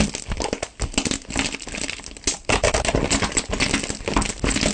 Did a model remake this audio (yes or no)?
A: no